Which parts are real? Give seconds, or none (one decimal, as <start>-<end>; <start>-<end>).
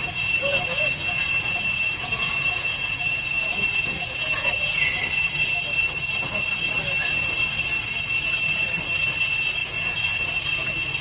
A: 4.5-9.6; 10.2-11.0